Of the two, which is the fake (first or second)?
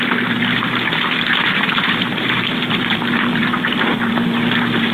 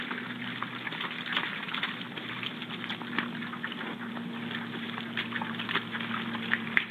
first